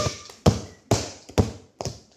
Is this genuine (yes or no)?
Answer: yes